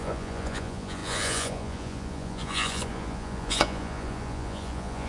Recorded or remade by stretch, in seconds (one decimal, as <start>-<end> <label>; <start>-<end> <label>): 0.0-5.1 remade